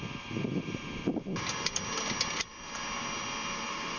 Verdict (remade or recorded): recorded